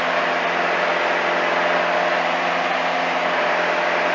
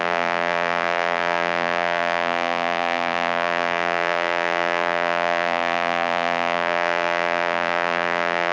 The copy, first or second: second